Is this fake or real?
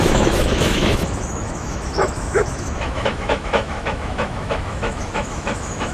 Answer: fake